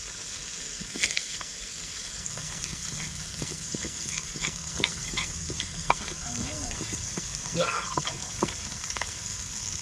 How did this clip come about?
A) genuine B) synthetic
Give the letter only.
B